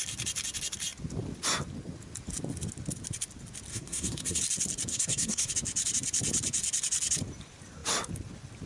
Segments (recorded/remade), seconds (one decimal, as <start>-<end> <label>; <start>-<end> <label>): 0.0-3.7 recorded; 3.7-4.4 remade; 4.4-4.9 recorded; 4.9-5.5 remade; 5.5-8.7 recorded

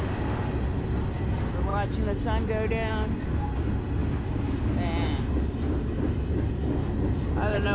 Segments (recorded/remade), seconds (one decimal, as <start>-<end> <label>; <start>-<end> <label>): 0.0-7.7 recorded

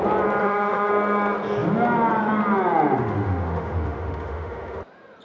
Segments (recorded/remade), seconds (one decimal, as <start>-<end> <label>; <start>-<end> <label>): 0.0-0.4 recorded; 0.4-0.9 remade; 0.9-3.0 recorded; 3.0-4.8 remade; 4.8-5.2 recorded

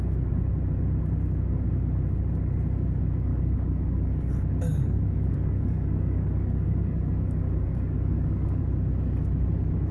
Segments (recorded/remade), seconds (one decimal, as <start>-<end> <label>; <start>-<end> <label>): 0.0-3.3 recorded; 3.3-4.3 remade; 4.3-4.7 recorded; 4.7-8.6 remade; 8.6-9.9 recorded

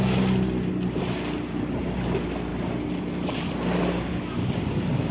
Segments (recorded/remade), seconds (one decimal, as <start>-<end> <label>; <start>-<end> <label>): 0.0-5.1 recorded